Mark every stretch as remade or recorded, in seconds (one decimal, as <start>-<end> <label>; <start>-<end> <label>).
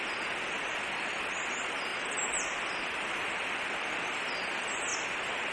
0.0-1.9 recorded; 1.9-3.5 remade; 3.5-4.9 recorded; 4.9-5.5 remade